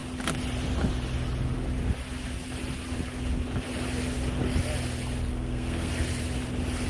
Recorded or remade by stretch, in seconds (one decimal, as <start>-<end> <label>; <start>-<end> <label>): 0.0-5.3 recorded; 5.3-5.9 remade; 5.9-6.9 recorded